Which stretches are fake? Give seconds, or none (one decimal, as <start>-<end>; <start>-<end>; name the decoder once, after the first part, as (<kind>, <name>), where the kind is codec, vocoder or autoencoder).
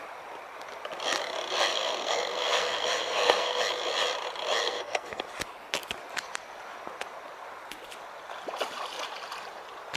1.7-3.6 (codec, SNAC); 4.6-5.2